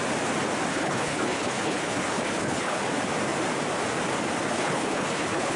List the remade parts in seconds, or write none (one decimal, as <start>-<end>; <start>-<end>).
0.7-2.8; 4.5-5.6